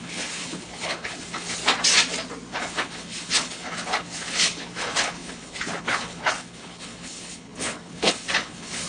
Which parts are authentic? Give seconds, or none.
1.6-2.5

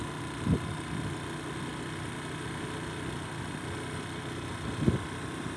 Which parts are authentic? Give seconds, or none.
0.0-5.6